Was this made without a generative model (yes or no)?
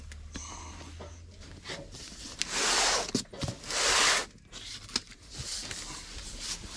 yes